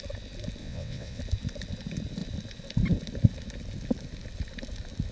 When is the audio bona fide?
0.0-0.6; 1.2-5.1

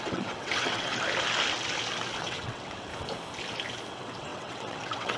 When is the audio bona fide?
0.9-2.2; 2.9-3.9

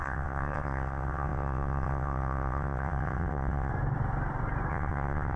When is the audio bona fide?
3.7-4.7

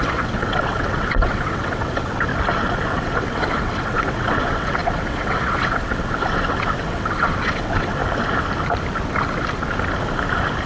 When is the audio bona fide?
2.3-2.8; 8.0-10.7

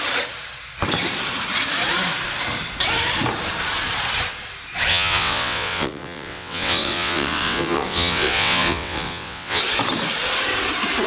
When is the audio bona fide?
0.0-4.9; 9.6-11.1

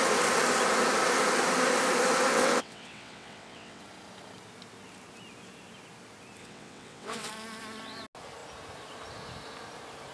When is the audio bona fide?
0.0-2.3; 3.8-6.4; 7.3-10.1

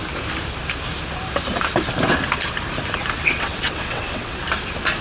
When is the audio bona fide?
0.0-3.2; 4.4-5.0